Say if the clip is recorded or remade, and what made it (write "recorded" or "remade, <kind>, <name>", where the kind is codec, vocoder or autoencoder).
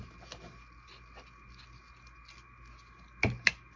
recorded